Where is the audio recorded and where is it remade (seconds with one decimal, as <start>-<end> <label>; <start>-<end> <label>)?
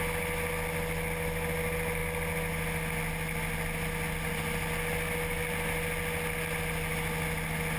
0.0-7.8 recorded